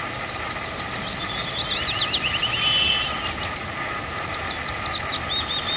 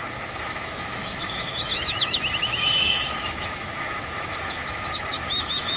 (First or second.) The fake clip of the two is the second